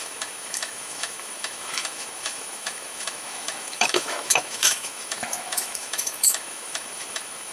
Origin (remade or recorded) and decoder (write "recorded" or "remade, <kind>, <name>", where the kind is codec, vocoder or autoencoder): remade, autoencoder, DAC-VAE